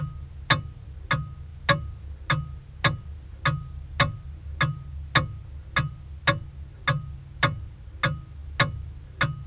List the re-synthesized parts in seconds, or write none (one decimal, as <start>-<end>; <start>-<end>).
none